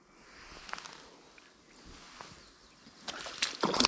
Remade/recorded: recorded